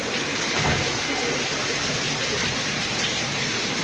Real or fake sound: real